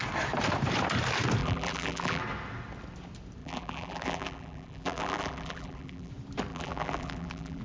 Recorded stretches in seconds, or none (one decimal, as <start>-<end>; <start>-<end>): 0.0-1.4; 2.2-3.4; 6.1-6.5